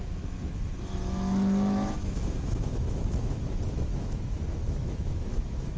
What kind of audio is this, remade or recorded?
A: remade